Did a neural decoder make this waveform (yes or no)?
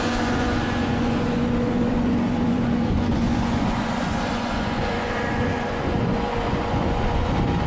yes